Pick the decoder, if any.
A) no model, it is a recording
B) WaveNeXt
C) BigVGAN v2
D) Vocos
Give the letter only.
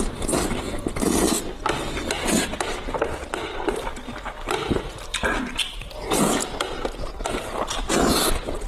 A